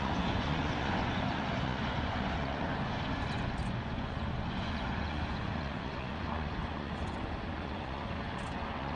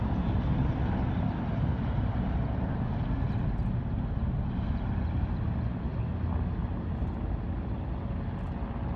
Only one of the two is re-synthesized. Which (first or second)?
first